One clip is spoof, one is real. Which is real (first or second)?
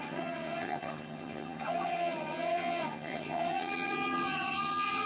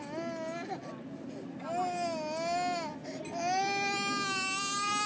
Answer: second